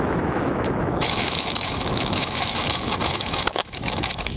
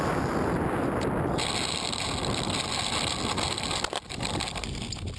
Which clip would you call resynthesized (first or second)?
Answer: first